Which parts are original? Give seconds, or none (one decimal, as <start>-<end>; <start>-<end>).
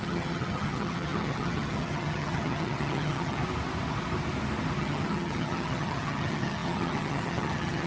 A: 3.4-4.8